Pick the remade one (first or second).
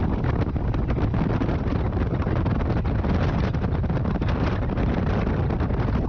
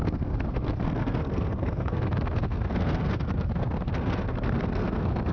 second